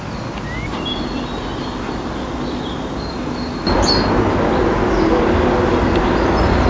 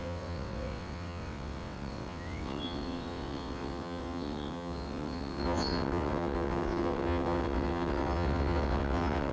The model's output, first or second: second